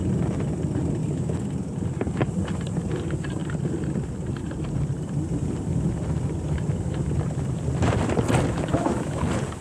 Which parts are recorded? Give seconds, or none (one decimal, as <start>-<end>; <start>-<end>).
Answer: 0.0-1.0; 1.5-8.7; 9.2-9.6